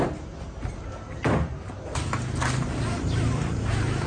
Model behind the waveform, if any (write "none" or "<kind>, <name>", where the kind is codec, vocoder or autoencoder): none